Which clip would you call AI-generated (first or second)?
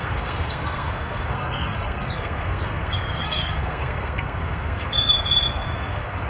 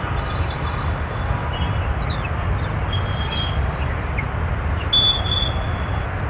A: first